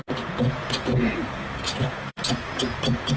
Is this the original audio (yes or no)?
no